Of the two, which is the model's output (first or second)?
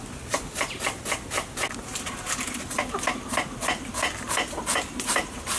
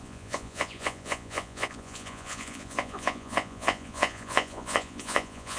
second